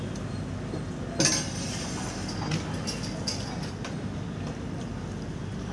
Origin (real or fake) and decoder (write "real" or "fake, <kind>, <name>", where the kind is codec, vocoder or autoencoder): real